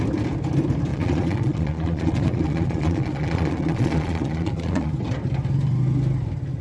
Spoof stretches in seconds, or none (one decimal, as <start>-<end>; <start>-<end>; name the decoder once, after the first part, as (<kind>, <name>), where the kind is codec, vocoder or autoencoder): 0.9-4.9 (vocoder, Vocos)